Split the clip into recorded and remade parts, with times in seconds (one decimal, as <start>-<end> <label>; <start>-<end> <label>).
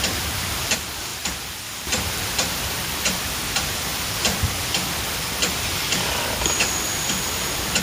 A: 0.0-7.8 remade